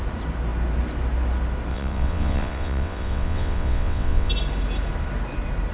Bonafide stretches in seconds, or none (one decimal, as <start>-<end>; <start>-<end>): 0.0-1.7; 4.3-5.7